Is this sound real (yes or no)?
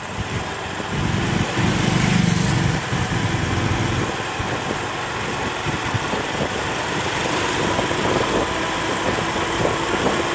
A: yes